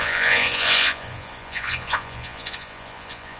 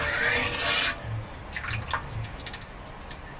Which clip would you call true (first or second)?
second